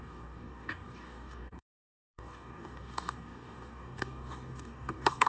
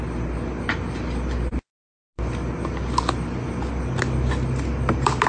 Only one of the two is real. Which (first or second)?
second